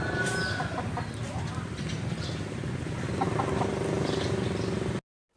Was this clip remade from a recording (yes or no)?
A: no